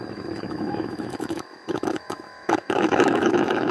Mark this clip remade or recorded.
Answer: remade